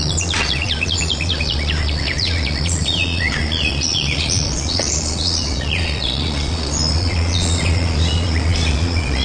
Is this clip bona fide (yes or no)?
no